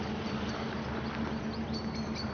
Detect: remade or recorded recorded